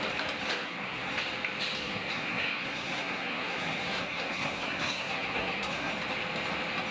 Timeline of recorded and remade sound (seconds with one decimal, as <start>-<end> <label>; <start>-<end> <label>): 0.0-0.5 recorded; 0.5-1.1 remade; 1.1-1.8 recorded; 1.8-5.9 remade; 5.9-6.9 recorded